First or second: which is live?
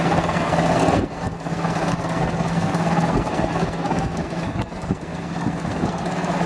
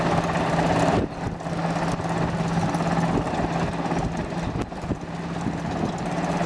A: second